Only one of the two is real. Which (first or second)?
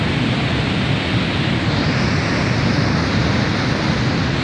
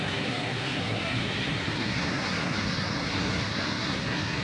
first